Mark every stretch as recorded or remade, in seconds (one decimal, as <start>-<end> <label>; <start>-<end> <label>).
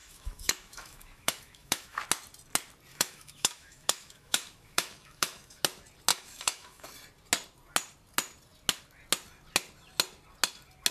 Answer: 0.0-2.0 remade; 2.0-2.9 recorded; 2.9-5.6 remade; 5.6-6.1 recorded; 6.1-6.9 remade; 6.9-10.9 recorded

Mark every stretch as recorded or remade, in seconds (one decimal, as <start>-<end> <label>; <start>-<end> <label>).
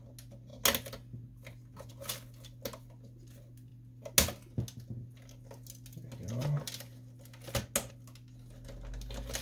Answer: 0.0-9.4 recorded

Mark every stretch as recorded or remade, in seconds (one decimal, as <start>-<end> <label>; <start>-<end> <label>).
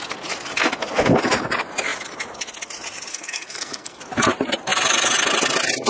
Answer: 0.0-3.1 recorded; 3.1-4.0 remade; 4.0-5.9 recorded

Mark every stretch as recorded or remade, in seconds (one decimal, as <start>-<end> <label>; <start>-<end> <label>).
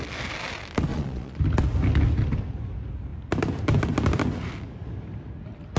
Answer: 0.0-0.9 recorded; 0.9-1.4 remade; 1.4-5.8 recorded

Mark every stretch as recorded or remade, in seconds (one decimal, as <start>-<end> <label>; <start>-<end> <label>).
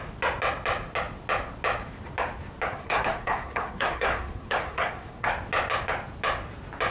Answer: 0.0-2.7 recorded; 2.7-5.3 remade; 5.3-6.9 recorded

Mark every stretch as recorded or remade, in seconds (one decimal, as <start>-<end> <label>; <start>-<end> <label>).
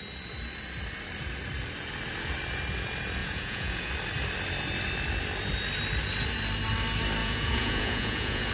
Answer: 0.0-3.2 recorded; 3.2-3.9 remade; 3.9-7.2 recorded; 7.2-8.5 remade